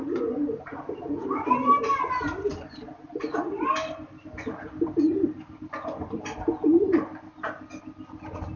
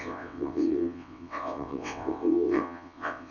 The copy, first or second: second